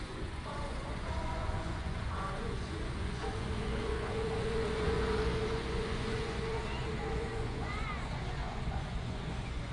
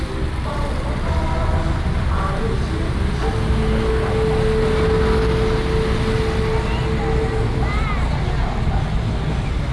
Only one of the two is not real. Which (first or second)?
first